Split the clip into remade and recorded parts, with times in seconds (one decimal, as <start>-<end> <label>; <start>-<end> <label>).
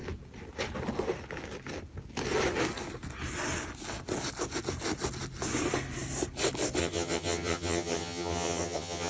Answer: 0.0-6.8 recorded; 6.8-9.1 remade